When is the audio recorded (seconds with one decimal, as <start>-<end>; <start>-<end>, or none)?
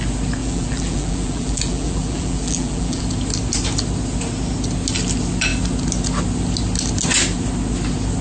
0.0-0.4; 3.0-8.2